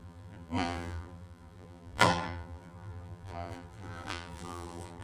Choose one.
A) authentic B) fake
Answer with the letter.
B